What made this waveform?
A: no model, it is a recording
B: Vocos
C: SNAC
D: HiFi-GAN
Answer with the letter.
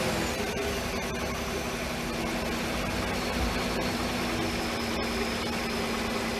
A